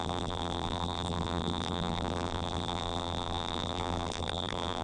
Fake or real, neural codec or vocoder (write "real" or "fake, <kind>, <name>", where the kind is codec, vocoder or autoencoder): fake, vocoder, BigVGAN v2